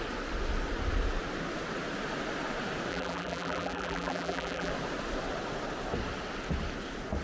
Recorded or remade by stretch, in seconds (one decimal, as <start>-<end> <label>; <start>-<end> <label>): 0.0-2.9 recorded; 2.9-4.7 remade; 4.7-7.2 recorded